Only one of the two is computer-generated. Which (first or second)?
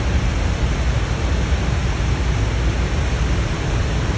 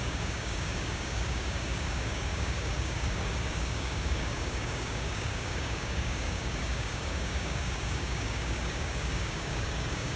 second